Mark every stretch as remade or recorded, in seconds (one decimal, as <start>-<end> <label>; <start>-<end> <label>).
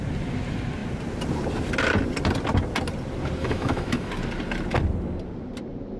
0.0-3.4 recorded; 3.4-4.1 remade; 4.1-6.0 recorded